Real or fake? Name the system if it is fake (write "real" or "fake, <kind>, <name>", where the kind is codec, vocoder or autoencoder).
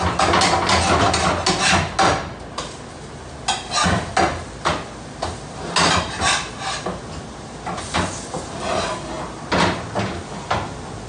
real